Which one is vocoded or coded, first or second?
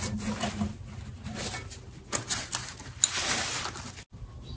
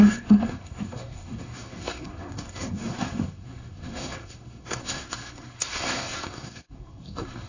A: second